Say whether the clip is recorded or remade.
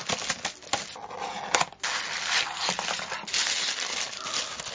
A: recorded